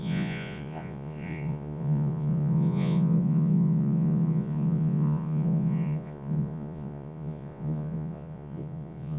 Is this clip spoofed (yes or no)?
yes